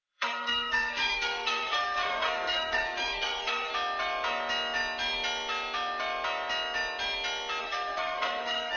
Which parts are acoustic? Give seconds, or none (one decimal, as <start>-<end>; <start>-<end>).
3.7-7.6